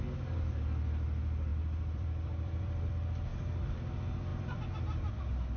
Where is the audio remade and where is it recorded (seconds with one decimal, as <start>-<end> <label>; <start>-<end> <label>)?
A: 0.0-1.5 recorded; 1.5-2.9 remade; 2.9-3.3 recorded; 3.3-3.8 remade; 3.8-4.3 recorded; 4.3-5.1 remade; 5.1-5.6 recorded